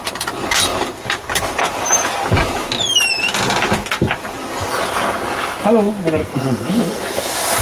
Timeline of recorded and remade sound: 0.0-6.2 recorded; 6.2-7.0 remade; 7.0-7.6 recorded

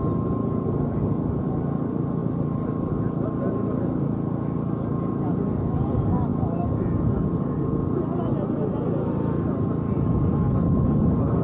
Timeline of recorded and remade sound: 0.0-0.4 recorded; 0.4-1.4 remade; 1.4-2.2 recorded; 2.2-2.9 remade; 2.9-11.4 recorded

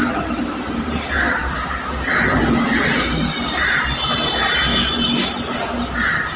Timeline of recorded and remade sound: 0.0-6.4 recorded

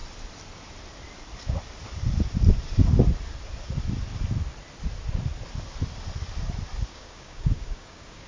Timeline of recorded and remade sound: 0.0-6.9 recorded; 6.9-8.3 remade

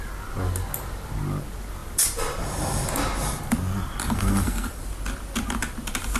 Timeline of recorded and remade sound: 0.0-4.0 recorded; 4.0-4.8 remade; 4.8-6.2 recorded

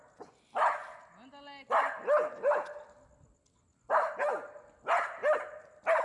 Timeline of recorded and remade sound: 0.0-5.2 recorded; 5.2-6.0 remade

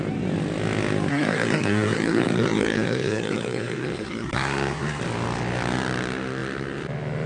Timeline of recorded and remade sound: 0.0-1.1 recorded; 1.1-5.0 remade; 5.0-7.3 recorded

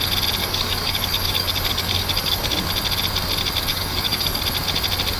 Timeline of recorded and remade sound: 0.0-0.4 recorded; 0.4-2.7 remade; 2.7-3.7 recorded; 3.7-4.4 remade; 4.4-5.2 recorded